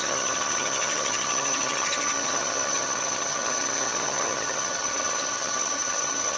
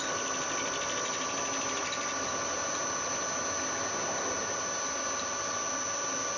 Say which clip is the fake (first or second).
first